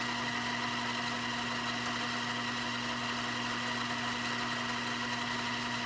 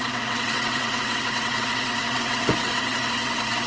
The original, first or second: first